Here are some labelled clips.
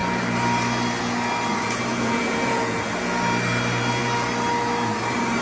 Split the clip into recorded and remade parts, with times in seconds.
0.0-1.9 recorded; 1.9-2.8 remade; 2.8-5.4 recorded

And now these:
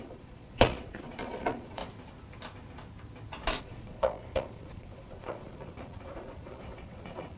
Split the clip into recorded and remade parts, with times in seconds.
0.0-1.8 remade; 1.8-3.6 recorded; 3.6-7.4 remade

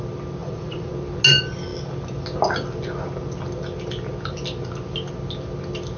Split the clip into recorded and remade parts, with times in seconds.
0.0-0.4 recorded; 0.4-0.9 remade; 0.9-6.0 recorded

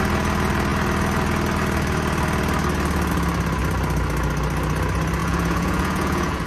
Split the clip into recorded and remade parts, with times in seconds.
0.0-5.2 recorded; 5.2-6.5 remade

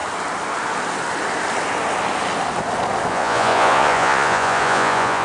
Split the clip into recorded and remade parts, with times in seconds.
0.0-3.1 recorded; 3.1-5.2 remade

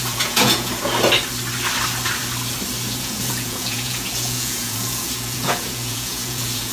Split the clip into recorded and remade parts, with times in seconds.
0.0-0.7 remade; 0.7-3.0 recorded; 3.0-6.7 remade

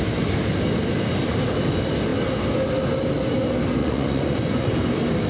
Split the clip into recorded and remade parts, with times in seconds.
0.0-3.8 recorded; 3.8-4.7 remade; 4.7-5.3 recorded

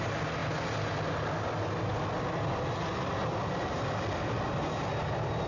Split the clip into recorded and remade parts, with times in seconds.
0.0-5.5 recorded